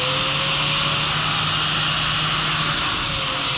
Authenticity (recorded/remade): recorded